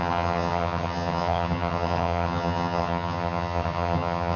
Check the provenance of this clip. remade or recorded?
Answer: remade